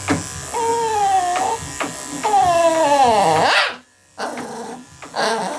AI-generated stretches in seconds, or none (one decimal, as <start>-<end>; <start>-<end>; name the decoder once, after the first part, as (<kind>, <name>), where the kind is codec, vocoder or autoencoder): none